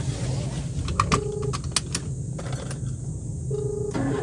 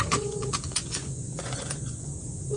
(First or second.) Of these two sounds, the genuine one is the first